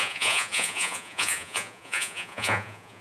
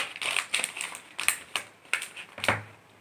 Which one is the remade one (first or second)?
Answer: first